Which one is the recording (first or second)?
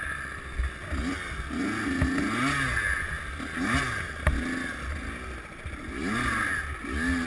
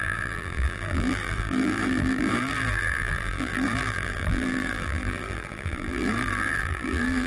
first